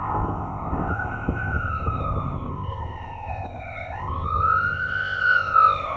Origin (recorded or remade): remade